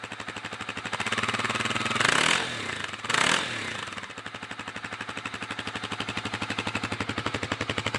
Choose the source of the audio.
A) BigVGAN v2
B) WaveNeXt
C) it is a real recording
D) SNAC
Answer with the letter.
C